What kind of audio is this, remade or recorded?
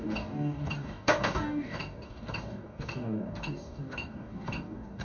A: remade